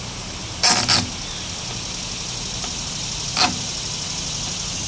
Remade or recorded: recorded